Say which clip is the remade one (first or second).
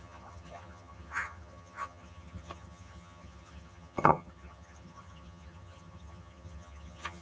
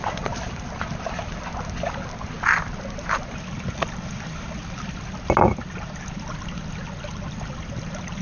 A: first